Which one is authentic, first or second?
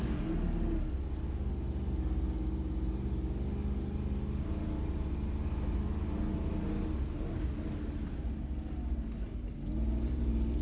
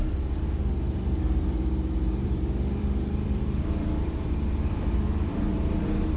first